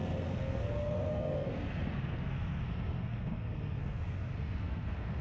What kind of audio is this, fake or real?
fake